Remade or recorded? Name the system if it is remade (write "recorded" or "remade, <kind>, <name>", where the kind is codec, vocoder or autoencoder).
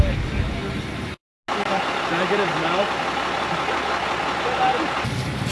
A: recorded